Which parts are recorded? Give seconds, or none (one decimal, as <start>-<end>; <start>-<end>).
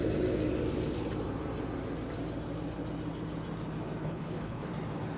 0.0-4.0; 4.7-5.2